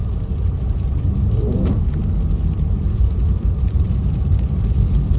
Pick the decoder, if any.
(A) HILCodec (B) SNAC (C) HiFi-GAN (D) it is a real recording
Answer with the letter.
D